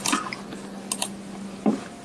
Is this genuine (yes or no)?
yes